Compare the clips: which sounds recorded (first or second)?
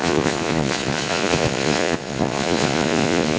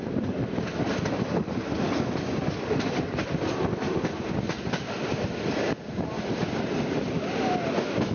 second